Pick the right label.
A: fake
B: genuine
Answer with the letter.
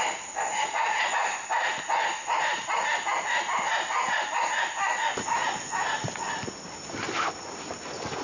B